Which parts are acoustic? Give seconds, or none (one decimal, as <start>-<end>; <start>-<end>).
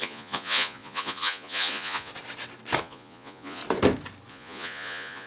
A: 2.1-2.8; 3.6-4.3